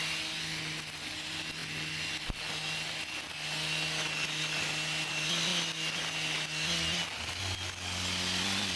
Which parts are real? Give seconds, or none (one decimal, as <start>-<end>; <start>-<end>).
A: 0.0-8.8